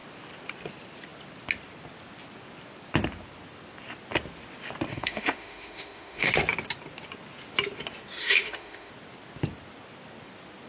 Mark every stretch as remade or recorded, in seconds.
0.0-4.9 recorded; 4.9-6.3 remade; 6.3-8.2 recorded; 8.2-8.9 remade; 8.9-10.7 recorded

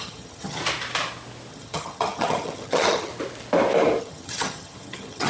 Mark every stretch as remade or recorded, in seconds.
0.0-0.6 remade; 0.6-1.5 recorded; 1.5-3.1 remade; 3.1-4.0 recorded; 4.0-5.3 remade

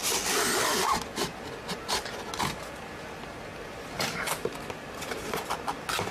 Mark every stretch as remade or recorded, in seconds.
0.0-6.1 recorded

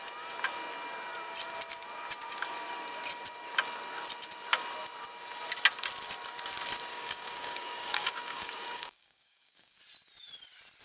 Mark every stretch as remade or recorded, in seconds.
0.0-6.9 recorded; 6.9-9.8 remade; 9.8-10.8 recorded

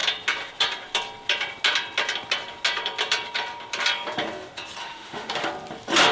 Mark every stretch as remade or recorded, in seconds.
0.0-4.8 recorded; 4.8-5.5 remade; 5.5-6.1 recorded

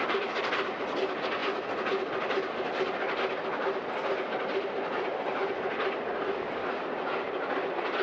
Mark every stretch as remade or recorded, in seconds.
0.0-8.0 recorded